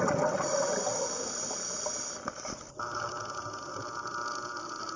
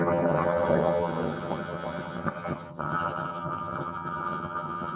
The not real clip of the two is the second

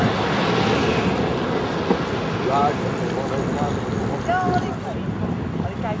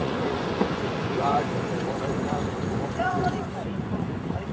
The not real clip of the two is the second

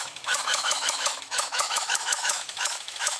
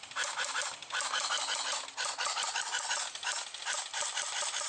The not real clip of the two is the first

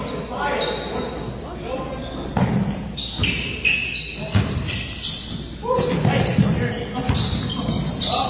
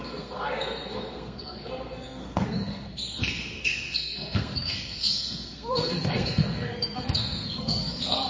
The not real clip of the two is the second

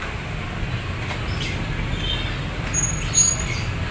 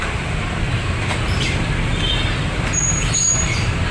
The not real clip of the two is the second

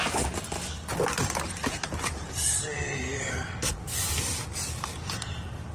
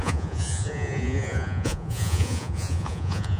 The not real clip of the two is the second